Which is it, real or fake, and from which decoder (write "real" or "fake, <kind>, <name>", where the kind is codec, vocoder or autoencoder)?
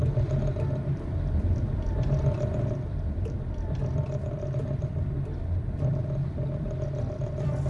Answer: fake, vocoder, BigVGAN v2